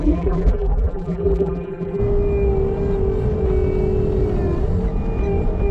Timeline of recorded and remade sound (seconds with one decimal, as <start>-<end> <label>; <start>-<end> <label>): 0.0-2.0 remade; 2.0-5.7 recorded

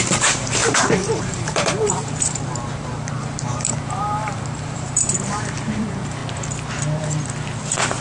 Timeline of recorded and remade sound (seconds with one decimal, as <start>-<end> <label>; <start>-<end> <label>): 0.0-6.2 remade; 6.2-8.0 recorded

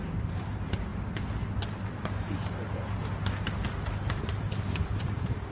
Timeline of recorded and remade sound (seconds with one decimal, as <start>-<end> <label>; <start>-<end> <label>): 0.0-0.9 remade; 0.9-4.2 recorded; 4.2-5.5 remade

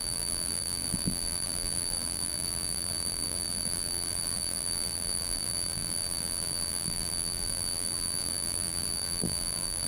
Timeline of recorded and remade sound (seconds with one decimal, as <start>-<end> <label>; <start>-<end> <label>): 0.0-9.9 remade